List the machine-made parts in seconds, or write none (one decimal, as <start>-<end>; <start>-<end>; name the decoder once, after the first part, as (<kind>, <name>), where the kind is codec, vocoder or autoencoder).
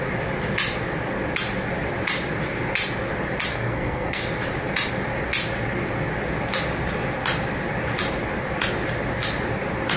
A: 3.5-4.2 (codec, SNAC)